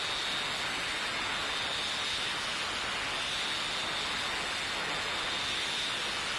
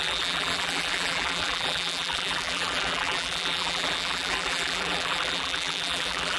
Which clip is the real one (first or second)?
first